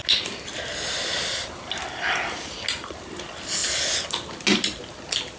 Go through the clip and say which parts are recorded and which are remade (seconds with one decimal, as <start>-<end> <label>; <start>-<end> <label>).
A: 0.0-5.4 recorded